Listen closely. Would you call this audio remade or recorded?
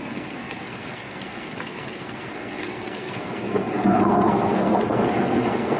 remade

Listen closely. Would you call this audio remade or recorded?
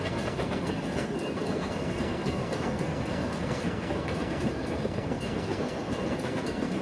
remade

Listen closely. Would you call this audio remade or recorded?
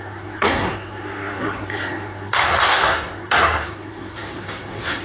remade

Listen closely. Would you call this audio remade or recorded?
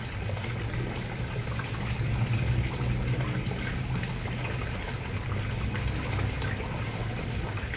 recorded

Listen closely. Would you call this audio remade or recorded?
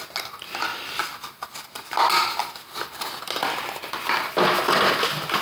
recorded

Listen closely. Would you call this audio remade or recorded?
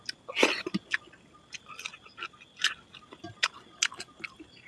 recorded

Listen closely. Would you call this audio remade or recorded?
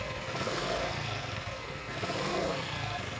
remade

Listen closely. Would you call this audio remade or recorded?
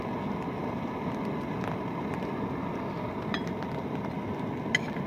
recorded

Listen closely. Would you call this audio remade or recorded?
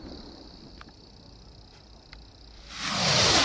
recorded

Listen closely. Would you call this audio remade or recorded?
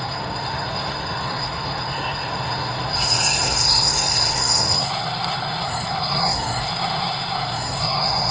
remade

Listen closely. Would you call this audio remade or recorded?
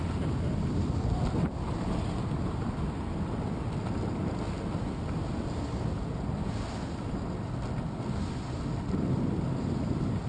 recorded